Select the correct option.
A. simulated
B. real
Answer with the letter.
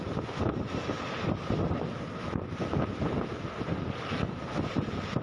A